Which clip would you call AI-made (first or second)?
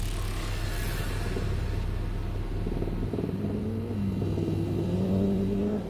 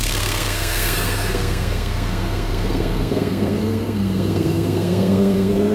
second